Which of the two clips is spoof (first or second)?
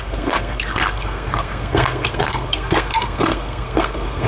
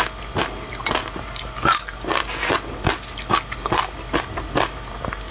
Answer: first